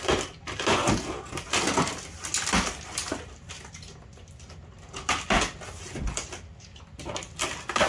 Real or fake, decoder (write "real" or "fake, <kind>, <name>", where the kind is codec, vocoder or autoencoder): real